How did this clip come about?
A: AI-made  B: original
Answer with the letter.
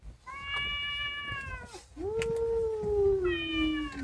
B